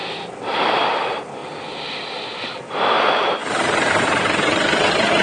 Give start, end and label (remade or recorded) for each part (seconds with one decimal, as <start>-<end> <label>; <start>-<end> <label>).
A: 0.0-1.4 remade; 1.4-3.0 recorded; 3.0-5.2 remade